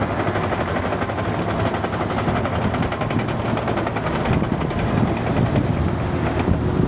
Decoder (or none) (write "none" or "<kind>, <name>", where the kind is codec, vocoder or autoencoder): none